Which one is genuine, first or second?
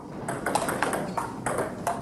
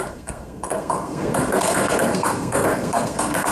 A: first